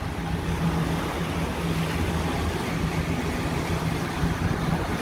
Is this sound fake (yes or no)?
no